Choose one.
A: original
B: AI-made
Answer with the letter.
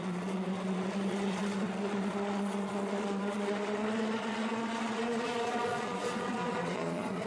B